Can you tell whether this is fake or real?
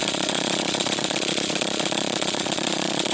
fake